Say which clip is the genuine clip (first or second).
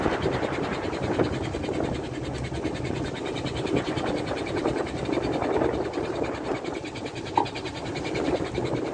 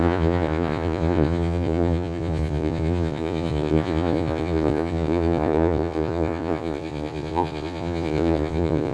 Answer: first